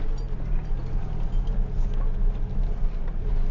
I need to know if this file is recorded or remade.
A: recorded